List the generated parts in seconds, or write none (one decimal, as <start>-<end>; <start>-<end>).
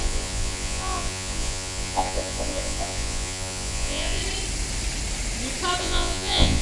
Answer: 0.0-4.2; 5.8-6.6